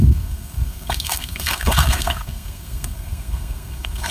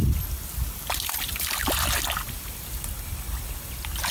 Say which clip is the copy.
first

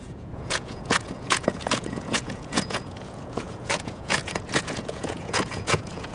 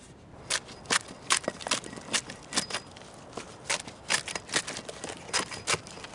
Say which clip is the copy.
first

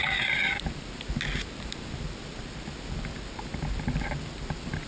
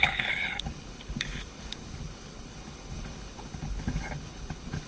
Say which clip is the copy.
second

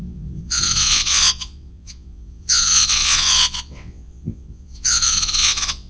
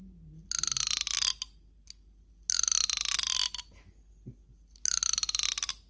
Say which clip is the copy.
first